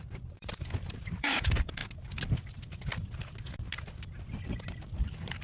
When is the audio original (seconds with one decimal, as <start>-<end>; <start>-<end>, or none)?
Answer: 1.8-5.0